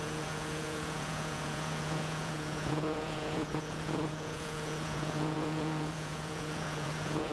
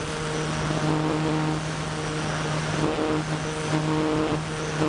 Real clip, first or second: second